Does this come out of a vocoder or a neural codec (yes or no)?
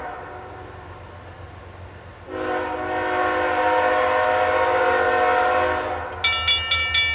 no